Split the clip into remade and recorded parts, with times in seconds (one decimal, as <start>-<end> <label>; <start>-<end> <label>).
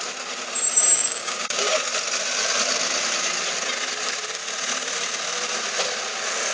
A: 0.0-0.9 recorded; 0.9-1.8 remade; 1.8-6.5 recorded